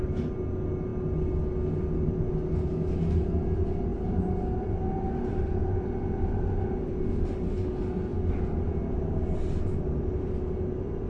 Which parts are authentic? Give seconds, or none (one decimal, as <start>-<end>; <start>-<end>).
0.0-3.9; 4.8-11.1